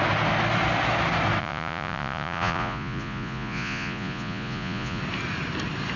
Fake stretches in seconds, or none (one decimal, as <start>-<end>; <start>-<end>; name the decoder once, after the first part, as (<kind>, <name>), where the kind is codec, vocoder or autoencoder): 1.4-5.0 (vocoder, Vocos)